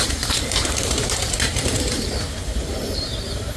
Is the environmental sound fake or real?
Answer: fake